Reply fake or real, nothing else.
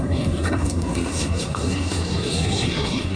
fake